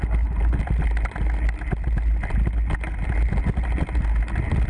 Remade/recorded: recorded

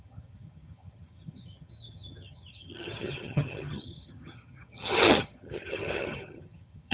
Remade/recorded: remade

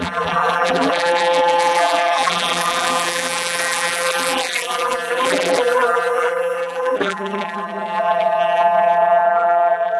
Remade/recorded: remade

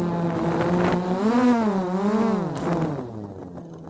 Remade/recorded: recorded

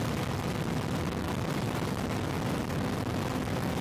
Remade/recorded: recorded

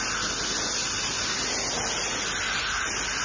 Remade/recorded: recorded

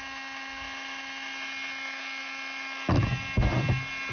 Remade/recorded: recorded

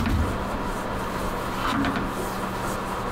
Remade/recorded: recorded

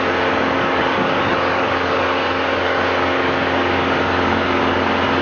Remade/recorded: remade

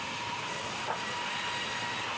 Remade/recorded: recorded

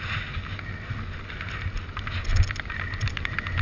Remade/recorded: recorded